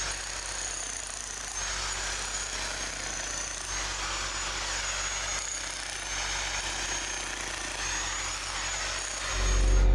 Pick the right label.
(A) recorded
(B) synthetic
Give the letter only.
A